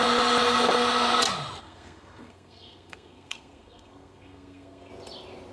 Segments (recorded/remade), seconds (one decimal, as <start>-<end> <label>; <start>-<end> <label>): 0.0-1.6 recorded; 1.6-4.9 remade; 4.9-5.5 recorded